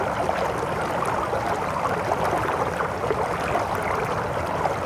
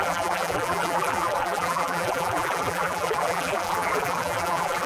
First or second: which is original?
first